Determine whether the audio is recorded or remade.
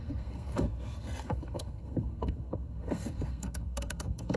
remade